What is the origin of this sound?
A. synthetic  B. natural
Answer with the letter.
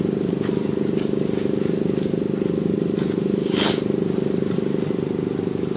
B